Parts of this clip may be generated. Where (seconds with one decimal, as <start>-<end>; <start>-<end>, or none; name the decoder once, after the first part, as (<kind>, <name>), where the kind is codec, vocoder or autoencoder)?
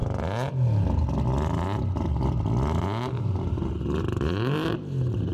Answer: 3.2-5.3 (vocoder, BigVGAN v2)